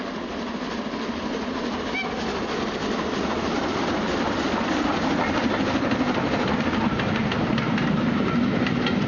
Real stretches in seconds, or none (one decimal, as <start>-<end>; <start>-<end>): 0.0-9.1